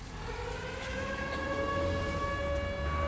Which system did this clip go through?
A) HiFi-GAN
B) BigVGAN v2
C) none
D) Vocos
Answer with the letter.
C